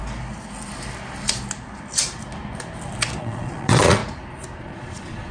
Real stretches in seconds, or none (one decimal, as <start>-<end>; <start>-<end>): 0.0-3.2; 4.0-4.6